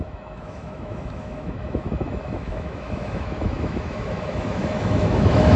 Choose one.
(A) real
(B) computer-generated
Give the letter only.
B